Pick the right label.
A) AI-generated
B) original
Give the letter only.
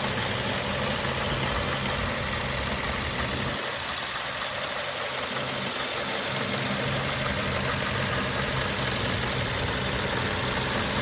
B